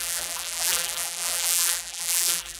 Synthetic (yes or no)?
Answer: yes